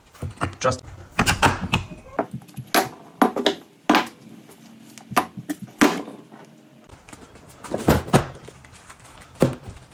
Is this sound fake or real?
real